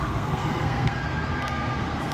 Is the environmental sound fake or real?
fake